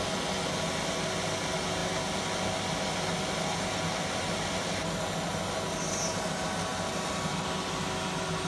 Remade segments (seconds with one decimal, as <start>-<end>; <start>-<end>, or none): none